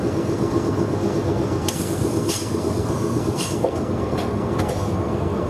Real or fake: fake